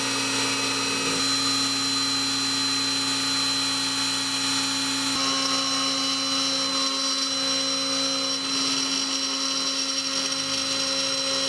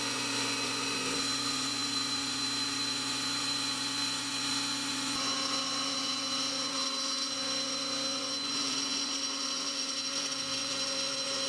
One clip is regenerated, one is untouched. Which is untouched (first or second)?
first